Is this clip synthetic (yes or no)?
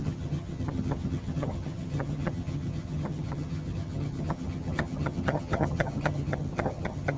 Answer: yes